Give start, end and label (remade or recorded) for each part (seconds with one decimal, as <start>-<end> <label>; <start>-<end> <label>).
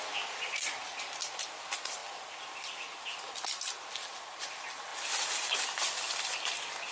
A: 0.0-2.0 remade; 2.0-4.4 recorded; 4.4-6.9 remade